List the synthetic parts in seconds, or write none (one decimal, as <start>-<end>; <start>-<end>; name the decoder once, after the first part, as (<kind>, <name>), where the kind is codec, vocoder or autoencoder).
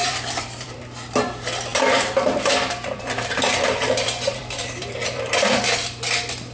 0.0-0.8 (vocoder, BigVGAN v2); 1.7-5.6